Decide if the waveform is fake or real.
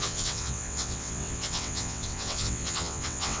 fake